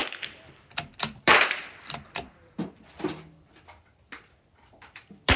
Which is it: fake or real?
fake